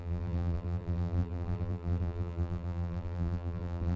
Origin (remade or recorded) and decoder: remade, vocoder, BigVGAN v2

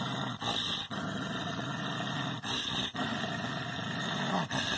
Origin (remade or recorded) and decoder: remade, vocoder, BigVGAN v2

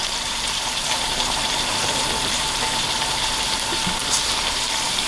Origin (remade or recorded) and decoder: remade, vocoder, BigVGAN v2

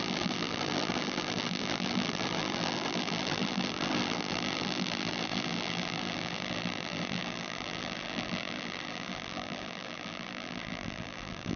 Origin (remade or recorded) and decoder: remade, vocoder, BigVGAN v2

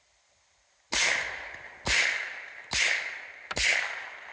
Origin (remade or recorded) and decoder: recorded